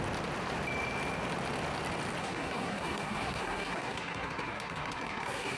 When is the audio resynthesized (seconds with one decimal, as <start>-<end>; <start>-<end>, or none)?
2.2-5.6